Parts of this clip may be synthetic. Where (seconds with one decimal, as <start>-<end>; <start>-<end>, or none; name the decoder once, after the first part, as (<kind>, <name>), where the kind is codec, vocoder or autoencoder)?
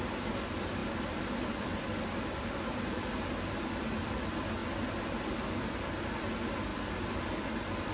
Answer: 0.0-4.6 (vocoder, BigVGAN v2); 5.5-7.9